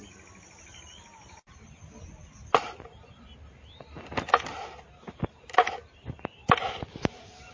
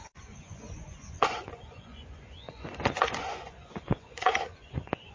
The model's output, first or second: second